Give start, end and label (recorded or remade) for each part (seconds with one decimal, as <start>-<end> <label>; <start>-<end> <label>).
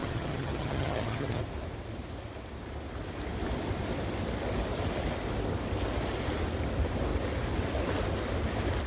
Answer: 0.0-1.4 remade; 1.4-8.9 recorded